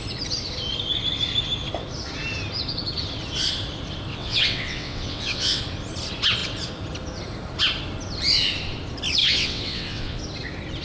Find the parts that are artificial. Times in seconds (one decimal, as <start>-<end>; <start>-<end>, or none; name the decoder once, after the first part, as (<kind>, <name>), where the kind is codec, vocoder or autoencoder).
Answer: 4.1-5.6 (vocoder, WaveNeXt); 9.2-10.2